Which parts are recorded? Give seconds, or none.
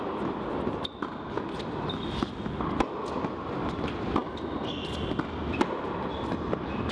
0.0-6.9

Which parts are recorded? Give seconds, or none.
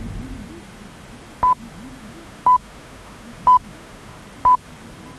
0.0-2.0; 4.2-5.2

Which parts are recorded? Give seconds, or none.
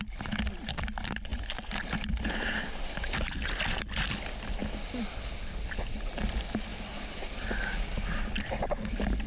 0.0-9.3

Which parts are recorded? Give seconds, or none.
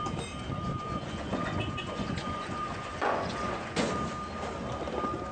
0.0-0.7; 3.9-5.3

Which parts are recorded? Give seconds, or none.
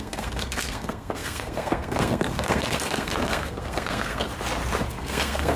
4.3-4.9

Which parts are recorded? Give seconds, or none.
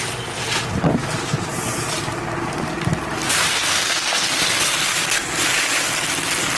0.0-3.5; 4.4-6.6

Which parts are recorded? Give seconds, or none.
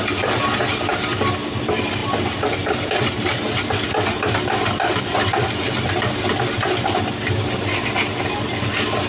0.0-9.1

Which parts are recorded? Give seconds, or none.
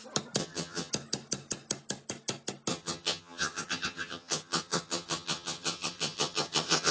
0.0-0.4; 0.9-2.7